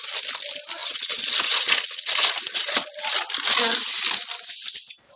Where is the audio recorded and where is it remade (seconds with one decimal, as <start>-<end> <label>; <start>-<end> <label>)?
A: 0.0-0.8 recorded; 0.8-3.3 remade; 3.3-5.2 recorded